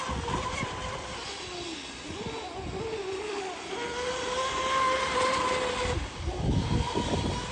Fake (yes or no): no